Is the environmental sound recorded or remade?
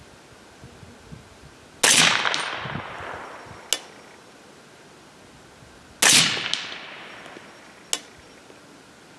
recorded